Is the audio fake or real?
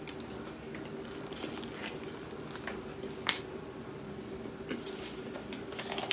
real